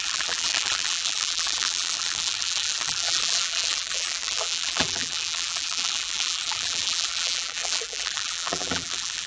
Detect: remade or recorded remade